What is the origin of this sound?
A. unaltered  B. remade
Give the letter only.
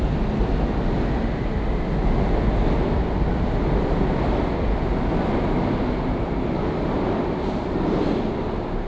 A